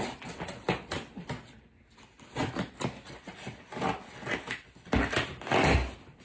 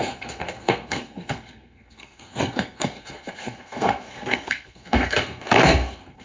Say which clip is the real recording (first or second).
first